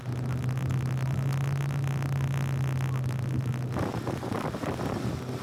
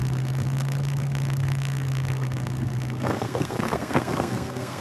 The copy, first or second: second